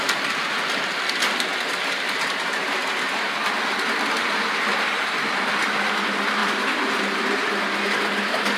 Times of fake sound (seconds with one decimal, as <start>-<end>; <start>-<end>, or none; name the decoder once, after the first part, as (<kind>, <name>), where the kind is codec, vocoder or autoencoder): 1.5-3.3 (vocoder, BigVGAN v2); 6.4-7.5